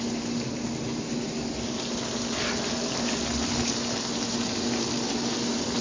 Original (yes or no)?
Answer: yes